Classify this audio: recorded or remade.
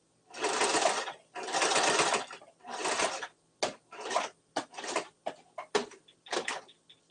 recorded